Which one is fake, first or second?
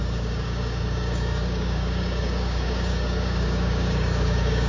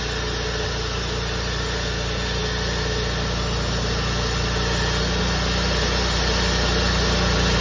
first